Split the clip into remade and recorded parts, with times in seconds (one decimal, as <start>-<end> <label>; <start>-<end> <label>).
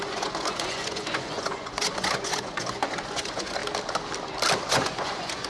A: 0.0-3.6 remade; 3.6-4.7 recorded; 4.7-5.5 remade